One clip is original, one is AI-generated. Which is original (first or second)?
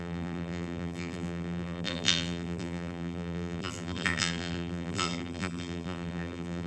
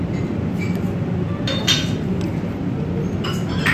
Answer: second